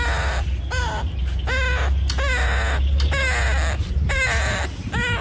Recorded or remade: recorded